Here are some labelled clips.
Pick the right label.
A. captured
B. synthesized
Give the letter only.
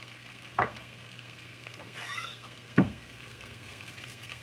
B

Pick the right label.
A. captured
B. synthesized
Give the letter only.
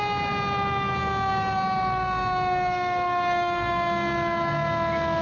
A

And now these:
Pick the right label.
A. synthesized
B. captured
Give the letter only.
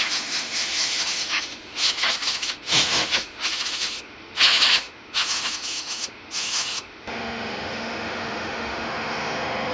A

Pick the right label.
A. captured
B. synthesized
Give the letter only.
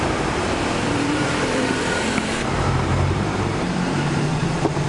B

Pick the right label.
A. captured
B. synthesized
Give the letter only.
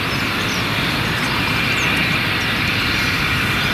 A